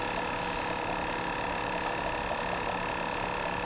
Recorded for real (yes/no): yes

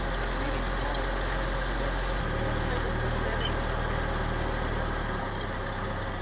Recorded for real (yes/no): yes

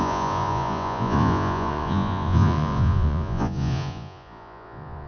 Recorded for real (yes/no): no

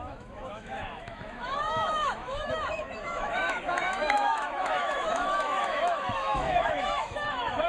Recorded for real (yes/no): no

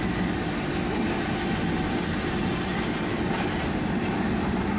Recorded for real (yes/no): yes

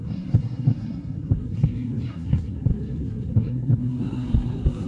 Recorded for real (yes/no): no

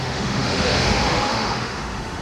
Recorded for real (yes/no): no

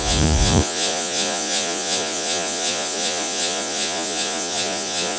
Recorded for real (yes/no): no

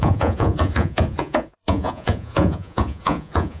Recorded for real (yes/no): no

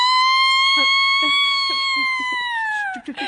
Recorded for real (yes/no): yes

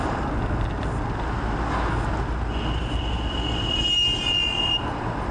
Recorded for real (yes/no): yes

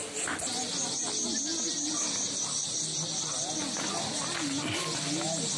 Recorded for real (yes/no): yes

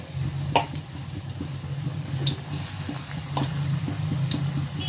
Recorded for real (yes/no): yes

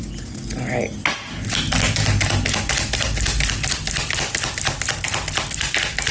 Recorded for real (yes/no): yes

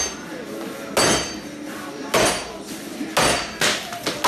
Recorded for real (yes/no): yes